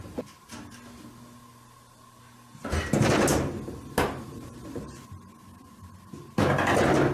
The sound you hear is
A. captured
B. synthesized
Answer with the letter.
A